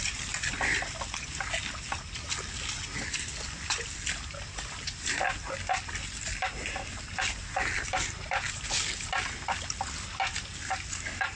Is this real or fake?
real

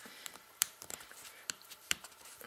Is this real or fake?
fake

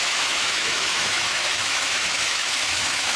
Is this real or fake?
fake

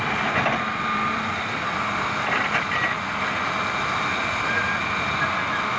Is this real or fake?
real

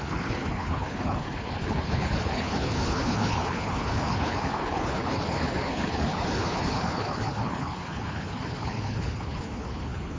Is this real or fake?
fake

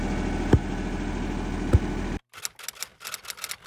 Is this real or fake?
real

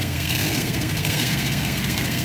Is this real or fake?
fake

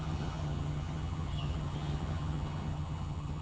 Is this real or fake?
fake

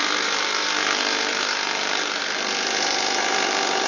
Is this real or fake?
fake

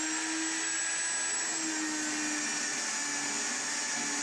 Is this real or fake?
real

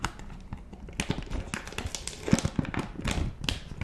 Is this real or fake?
real